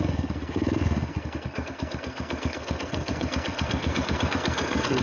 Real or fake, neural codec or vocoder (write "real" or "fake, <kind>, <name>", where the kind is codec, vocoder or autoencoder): fake, codec, SNAC